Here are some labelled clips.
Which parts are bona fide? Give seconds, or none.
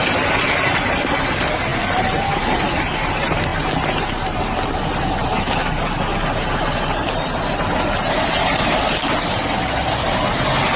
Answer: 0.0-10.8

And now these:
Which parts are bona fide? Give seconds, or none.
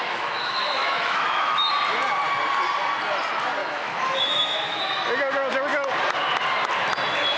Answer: 1.7-3.6; 4.8-7.4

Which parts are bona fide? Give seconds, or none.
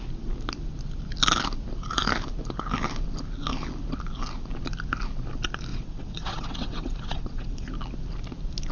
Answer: 0.0-5.7; 7.7-8.7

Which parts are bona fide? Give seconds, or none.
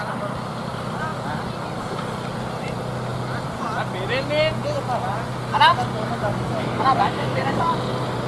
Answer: 0.0-6.3; 7.7-8.3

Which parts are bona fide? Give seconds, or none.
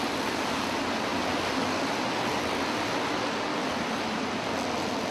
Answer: 0.0-5.1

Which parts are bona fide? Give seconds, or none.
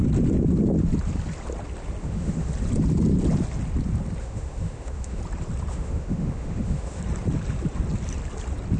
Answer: 0.0-2.0; 2.5-4.2; 5.2-5.7; 7.0-8.8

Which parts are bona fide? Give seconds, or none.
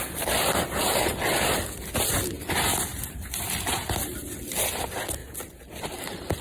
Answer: 0.0-2.7; 3.5-6.4